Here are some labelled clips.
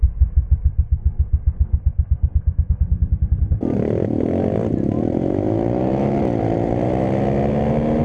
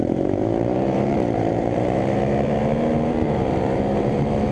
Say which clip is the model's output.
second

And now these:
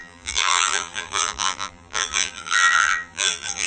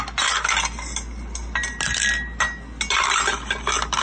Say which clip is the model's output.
first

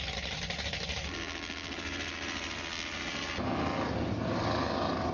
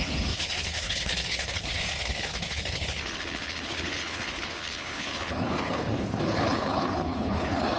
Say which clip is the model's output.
second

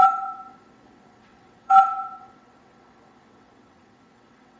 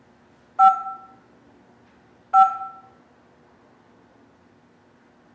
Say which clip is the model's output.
first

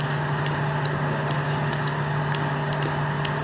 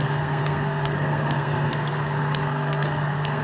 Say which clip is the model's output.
second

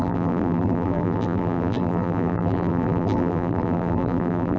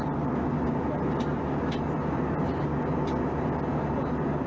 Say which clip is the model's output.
first